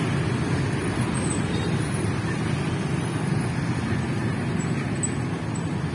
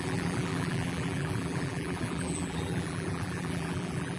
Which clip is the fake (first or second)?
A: second